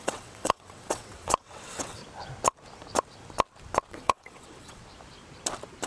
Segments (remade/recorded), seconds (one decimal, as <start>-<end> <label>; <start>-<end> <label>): 0.0-2.0 remade; 2.0-3.9 recorded; 3.9-4.8 remade; 4.8-5.9 recorded